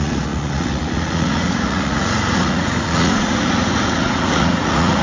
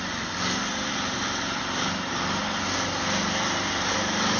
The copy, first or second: first